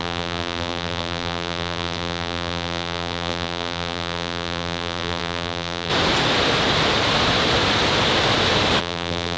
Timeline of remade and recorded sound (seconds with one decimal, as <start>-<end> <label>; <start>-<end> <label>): 0.0-5.9 remade; 5.9-8.8 recorded; 8.8-9.4 remade